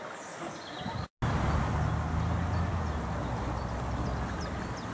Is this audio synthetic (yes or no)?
no